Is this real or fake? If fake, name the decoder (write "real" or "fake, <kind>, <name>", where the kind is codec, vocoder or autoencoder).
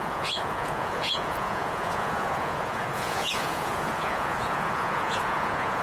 fake, vocoder, Vocos